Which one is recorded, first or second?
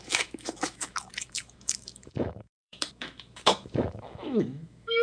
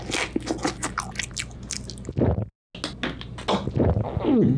second